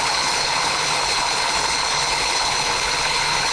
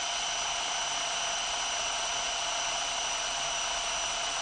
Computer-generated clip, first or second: first